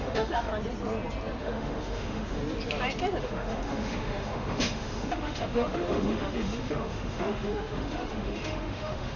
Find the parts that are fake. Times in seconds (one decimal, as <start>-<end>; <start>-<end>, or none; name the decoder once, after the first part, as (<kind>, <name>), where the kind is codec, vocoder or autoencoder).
0.0-0.5 (autoencoder, DAC-VAE); 1.4-2.4; 3.2-9.2